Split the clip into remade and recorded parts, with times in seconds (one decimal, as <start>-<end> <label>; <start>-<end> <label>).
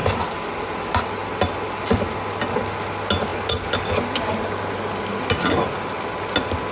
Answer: 0.0-6.7 recorded